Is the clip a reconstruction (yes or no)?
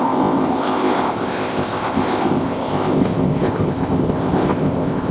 yes